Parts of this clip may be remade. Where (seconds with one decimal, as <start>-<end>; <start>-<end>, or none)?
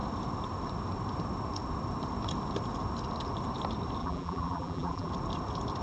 4.0-5.1